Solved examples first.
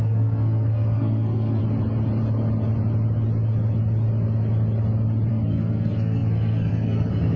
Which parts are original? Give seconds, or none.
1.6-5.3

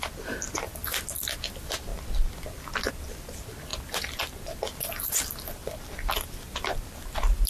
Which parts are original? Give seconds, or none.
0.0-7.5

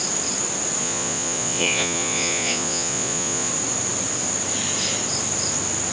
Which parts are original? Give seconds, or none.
0.0-0.8; 3.5-5.9

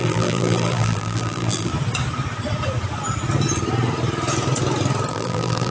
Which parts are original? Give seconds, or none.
1.7-5.1